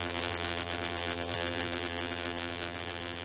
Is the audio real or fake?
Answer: fake